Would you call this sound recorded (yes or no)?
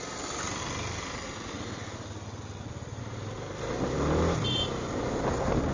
yes